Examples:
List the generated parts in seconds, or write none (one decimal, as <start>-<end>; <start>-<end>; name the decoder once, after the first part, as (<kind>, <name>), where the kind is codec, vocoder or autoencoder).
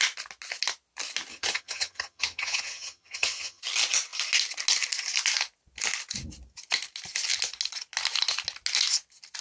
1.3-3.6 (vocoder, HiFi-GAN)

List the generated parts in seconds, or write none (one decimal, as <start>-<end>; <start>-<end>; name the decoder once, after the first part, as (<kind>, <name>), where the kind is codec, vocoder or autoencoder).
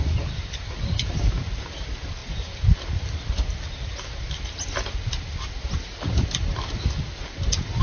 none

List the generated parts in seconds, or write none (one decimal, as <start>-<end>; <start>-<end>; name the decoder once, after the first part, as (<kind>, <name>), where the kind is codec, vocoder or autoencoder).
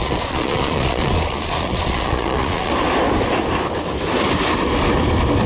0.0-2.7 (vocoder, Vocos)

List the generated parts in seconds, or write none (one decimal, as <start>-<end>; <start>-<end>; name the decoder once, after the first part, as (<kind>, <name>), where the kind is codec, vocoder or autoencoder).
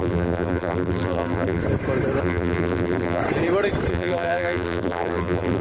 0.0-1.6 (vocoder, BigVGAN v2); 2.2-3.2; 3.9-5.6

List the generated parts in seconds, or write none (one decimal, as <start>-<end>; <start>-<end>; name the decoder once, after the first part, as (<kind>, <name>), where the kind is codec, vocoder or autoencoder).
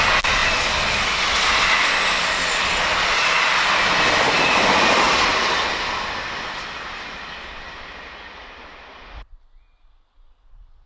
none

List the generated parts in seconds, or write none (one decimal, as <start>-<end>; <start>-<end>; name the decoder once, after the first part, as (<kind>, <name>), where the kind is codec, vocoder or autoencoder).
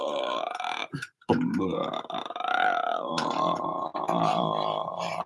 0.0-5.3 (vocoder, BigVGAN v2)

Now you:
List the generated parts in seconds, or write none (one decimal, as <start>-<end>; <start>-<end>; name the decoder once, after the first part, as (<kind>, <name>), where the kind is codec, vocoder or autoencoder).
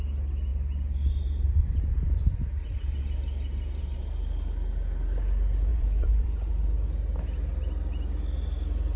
5.7-6.5 (vocoder, Vocos)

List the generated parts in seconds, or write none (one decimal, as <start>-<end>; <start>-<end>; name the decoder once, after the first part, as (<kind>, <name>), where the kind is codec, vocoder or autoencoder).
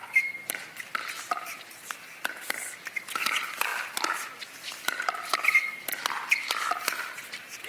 0.0-0.6 (vocoder, BigVGAN v2)